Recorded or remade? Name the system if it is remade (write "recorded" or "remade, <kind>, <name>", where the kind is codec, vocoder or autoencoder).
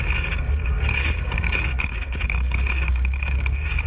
remade, codec, DAC